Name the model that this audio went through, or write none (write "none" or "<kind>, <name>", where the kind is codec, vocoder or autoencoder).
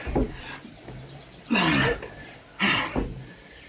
none